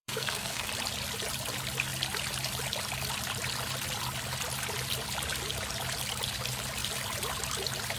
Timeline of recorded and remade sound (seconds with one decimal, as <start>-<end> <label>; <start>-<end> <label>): 0.0-0.7 remade; 0.7-8.0 recorded